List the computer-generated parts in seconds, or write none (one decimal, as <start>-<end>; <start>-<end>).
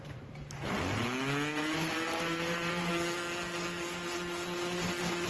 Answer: 1.5-2.9